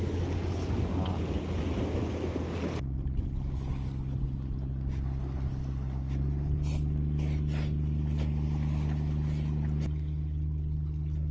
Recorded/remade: recorded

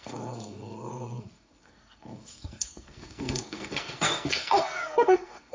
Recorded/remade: remade